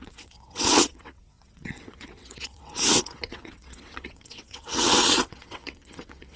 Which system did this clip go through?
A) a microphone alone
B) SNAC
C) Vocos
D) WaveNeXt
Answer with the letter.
D